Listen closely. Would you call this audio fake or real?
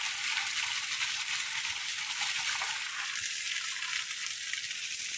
real